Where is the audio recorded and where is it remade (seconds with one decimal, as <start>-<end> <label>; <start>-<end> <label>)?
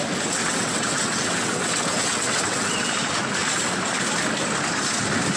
0.0-0.4 recorded; 0.4-2.9 remade; 2.9-5.4 recorded